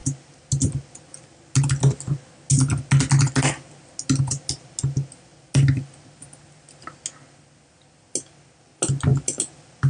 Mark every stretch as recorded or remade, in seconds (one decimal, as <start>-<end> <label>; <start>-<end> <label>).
0.0-9.9 recorded